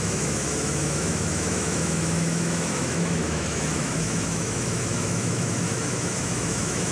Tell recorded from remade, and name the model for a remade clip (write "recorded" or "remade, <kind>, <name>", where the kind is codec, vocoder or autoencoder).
remade, autoencoder, DAC-VAE